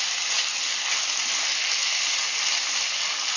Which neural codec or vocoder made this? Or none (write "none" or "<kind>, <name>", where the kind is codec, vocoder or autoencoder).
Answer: none